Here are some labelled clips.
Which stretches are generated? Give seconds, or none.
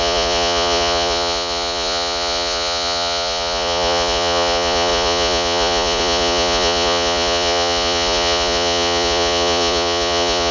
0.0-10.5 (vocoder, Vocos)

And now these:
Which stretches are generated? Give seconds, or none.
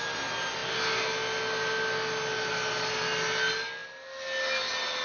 none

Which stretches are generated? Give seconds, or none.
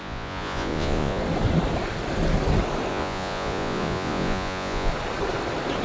0.0-1.2 (vocoder, Vocos); 2.9-4.9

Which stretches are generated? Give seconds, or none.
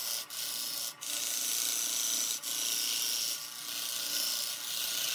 none